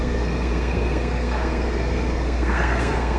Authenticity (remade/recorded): remade